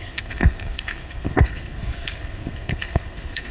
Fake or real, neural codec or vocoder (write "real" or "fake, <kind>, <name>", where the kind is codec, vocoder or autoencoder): fake, codec, SNAC